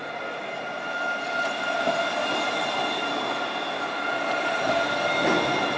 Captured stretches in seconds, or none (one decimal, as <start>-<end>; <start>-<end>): 0.0-5.8